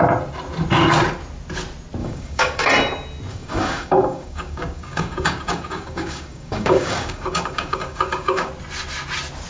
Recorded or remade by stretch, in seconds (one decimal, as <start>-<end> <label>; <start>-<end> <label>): 0.0-2.0 recorded; 2.0-2.7 remade; 2.7-3.3 recorded; 3.3-8.5 remade; 8.5-9.5 recorded